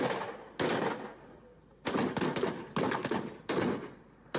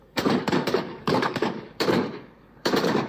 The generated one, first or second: second